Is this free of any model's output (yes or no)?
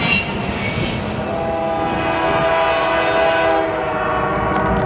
yes